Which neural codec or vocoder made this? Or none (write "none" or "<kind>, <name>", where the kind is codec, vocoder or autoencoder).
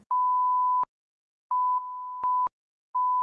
none